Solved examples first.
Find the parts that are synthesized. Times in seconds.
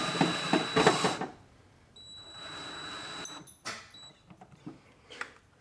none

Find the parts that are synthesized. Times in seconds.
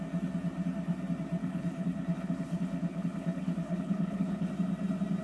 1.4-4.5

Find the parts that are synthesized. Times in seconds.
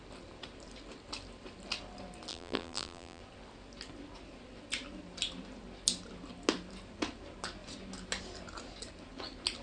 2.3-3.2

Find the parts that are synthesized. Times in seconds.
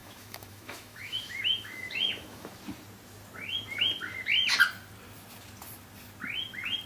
0.0-2.5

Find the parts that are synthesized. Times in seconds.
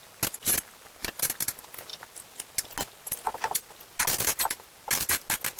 none